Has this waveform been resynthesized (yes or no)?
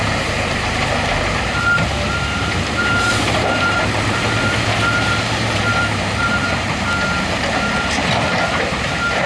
yes